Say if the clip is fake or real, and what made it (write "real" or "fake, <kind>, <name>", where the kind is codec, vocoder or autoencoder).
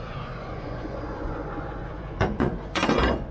fake, vocoder, Vocos